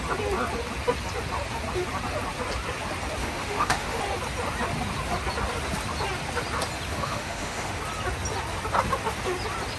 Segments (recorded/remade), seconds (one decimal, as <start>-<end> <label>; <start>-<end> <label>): 0.0-3.2 recorded; 3.2-4.0 remade; 4.0-6.9 recorded; 6.9-7.8 remade; 7.8-9.8 recorded

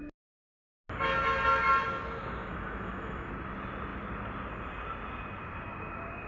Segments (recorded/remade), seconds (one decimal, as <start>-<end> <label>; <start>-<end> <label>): 0.0-2.4 recorded; 2.4-3.3 remade; 3.3-6.3 recorded

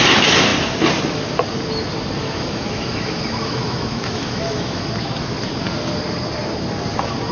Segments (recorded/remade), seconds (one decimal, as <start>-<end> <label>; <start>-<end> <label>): 0.0-2.2 recorded; 2.2-4.9 remade; 4.9-7.3 recorded

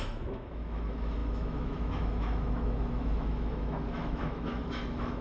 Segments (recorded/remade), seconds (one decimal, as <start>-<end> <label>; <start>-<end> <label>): 0.0-5.2 remade

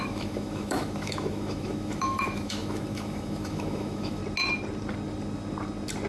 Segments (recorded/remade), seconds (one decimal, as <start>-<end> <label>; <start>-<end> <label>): 0.0-4.2 remade; 4.2-6.1 recorded